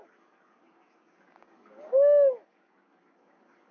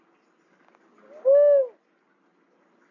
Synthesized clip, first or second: first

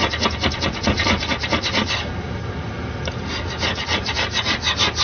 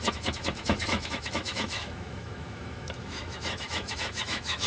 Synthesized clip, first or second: second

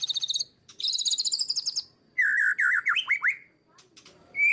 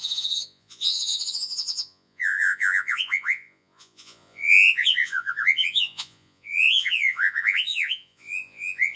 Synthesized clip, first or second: second